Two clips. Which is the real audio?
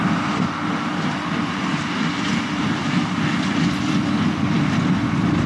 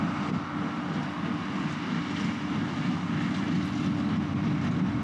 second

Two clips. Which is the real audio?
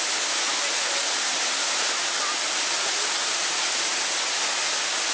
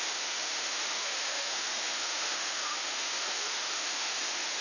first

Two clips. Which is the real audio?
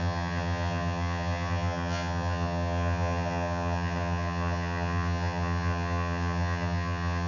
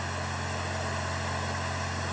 second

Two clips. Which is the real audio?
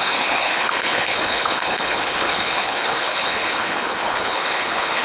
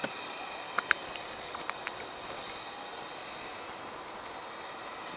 second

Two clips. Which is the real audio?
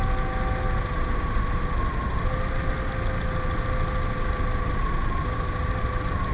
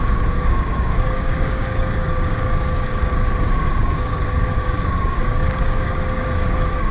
first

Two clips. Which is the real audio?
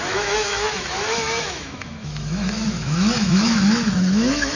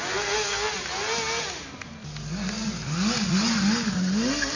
second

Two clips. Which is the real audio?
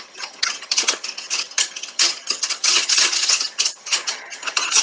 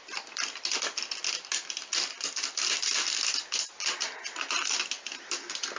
second